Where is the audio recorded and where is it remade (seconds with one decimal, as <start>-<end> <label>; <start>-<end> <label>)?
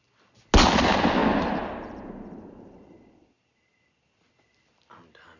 0.0-5.4 recorded